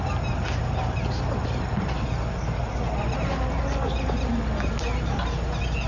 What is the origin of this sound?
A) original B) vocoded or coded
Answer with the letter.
A